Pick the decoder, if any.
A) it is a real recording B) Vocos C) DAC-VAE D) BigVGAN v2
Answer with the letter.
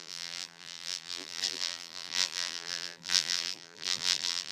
D